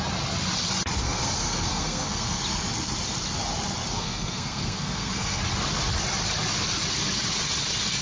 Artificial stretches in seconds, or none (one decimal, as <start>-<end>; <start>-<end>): 1.0-2.4; 3.9-5.4